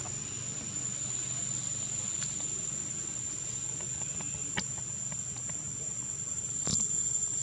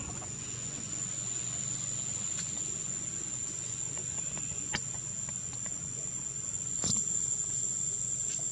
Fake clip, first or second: second